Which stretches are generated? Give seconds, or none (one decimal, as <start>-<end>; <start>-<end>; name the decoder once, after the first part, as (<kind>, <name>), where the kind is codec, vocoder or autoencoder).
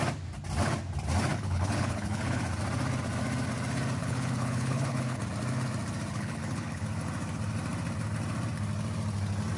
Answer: 1.3-2.4 (codec, HILCodec); 4.0-5.2; 6.1-6.8